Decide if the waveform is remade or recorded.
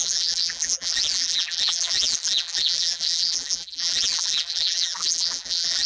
remade